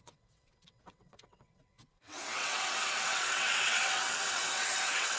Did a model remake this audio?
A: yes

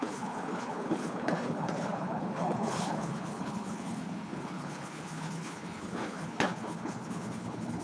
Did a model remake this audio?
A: yes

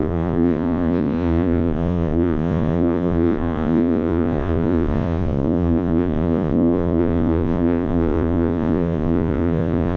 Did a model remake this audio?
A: yes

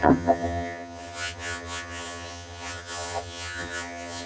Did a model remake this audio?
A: yes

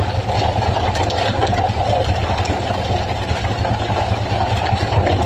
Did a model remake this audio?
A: no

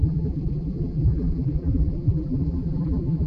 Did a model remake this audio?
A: yes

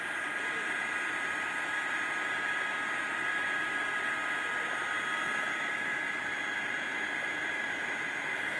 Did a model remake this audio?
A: no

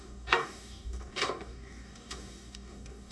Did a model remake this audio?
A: yes